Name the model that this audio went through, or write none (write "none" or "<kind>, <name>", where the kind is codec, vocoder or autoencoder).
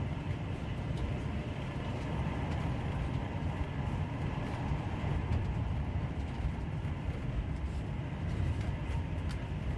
vocoder, BigVGAN v2